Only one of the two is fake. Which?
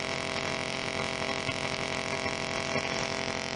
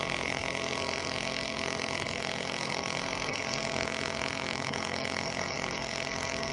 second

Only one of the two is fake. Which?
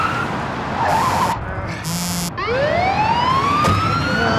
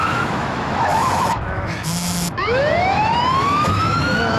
second